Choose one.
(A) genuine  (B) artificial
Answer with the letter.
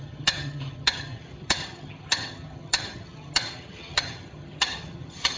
B